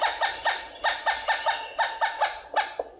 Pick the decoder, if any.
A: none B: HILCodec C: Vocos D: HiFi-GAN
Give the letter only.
A